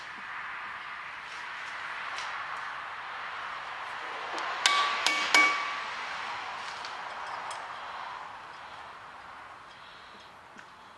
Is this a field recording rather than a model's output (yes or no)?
yes